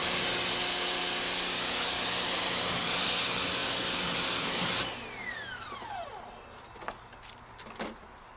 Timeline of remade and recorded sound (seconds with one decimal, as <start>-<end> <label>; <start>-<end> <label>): 0.0-8.4 recorded